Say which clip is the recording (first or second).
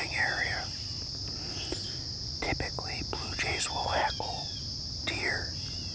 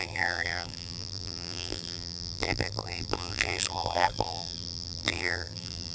first